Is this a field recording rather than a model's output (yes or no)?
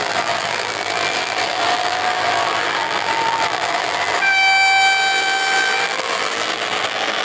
no